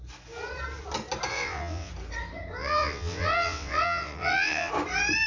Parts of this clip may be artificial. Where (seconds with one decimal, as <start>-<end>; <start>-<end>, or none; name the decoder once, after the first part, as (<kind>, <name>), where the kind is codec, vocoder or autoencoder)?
1.3-1.9 (vocoder, WaveNeXt); 2.6-4.7